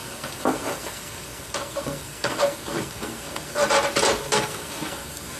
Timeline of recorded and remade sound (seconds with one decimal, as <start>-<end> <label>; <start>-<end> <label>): 0.0-3.6 remade; 3.6-4.2 recorded; 4.2-5.4 remade